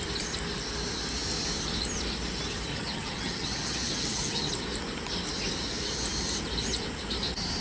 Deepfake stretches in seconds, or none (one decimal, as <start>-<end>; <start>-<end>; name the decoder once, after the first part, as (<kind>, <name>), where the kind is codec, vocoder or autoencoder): 2.7-4.5 (vocoder, HiFi-GAN)